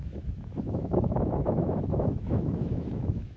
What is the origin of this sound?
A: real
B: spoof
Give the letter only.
B